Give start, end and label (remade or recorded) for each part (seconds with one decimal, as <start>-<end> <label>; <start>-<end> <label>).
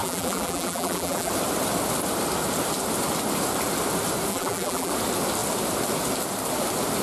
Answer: 0.0-1.3 remade; 1.3-4.3 recorded; 4.3-4.9 remade; 4.9-7.0 recorded